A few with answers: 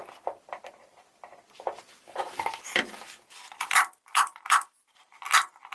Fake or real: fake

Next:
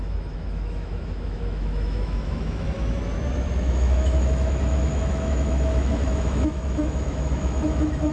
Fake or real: fake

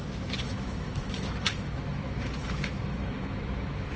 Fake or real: fake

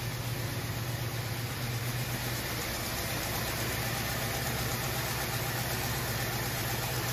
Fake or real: fake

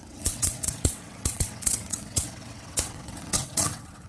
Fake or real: fake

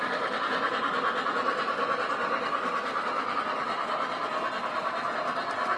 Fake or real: real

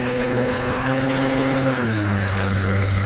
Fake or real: fake